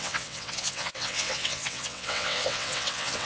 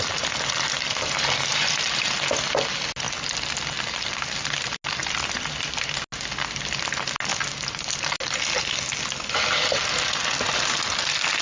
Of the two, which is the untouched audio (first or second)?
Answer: second